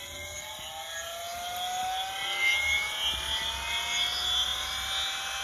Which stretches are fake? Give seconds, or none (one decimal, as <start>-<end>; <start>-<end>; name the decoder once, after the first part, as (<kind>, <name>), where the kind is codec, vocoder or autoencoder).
none